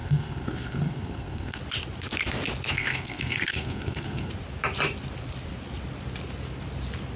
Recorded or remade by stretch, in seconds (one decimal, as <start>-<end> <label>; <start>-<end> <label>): 0.0-1.6 remade; 1.6-2.7 recorded; 2.7-4.3 remade; 4.3-7.2 recorded

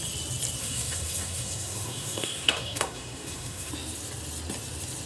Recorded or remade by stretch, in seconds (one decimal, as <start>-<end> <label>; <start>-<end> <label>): 0.0-0.6 recorded; 0.6-3.7 remade; 3.7-5.1 recorded